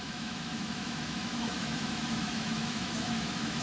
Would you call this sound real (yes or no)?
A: no